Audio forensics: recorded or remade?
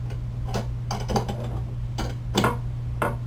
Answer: recorded